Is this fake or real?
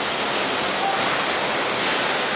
real